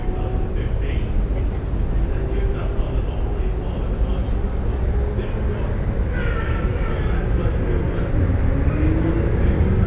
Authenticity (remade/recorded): recorded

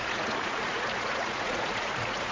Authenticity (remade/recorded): remade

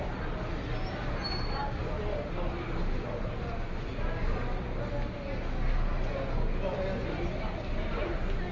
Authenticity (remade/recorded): recorded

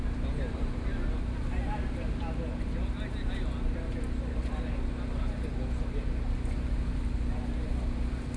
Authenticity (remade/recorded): recorded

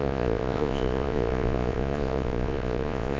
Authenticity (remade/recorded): remade